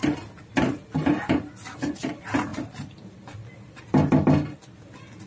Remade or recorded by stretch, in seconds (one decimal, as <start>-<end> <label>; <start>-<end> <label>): 0.0-5.3 recorded